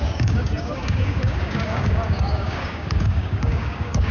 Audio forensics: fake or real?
fake